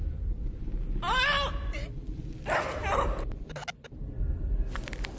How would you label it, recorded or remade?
recorded